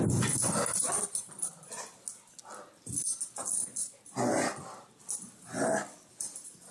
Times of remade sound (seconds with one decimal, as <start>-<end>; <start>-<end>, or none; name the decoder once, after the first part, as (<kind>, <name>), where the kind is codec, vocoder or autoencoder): none